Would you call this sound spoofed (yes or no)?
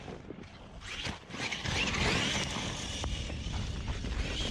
no